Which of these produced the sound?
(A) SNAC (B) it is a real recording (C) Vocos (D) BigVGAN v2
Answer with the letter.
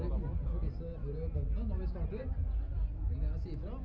B